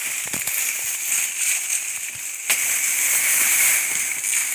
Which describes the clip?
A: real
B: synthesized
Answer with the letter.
A